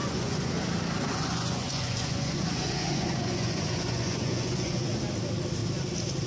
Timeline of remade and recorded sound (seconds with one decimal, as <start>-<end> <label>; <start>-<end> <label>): 0.0-0.5 remade; 0.5-1.1 recorded; 1.1-4.9 remade; 4.9-6.3 recorded